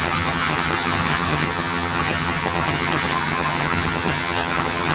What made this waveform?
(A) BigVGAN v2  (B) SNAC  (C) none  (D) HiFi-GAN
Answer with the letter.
D